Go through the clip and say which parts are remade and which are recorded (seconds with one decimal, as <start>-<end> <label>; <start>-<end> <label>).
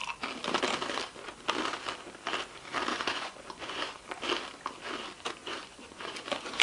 0.0-2.9 recorded; 2.9-4.0 remade; 4.0-5.4 recorded; 5.4-6.6 remade